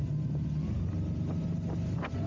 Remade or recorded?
recorded